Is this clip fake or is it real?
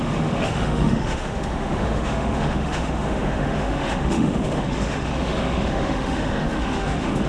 fake